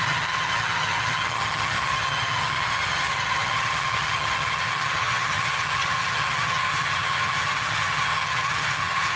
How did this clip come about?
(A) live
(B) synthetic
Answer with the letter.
B